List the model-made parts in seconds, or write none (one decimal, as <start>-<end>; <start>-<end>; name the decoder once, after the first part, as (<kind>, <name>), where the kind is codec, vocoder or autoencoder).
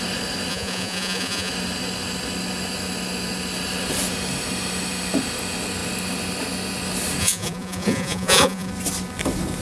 0.5-1.5 (vocoder, Vocos); 7.2-8.7